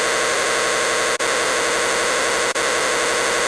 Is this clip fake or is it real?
real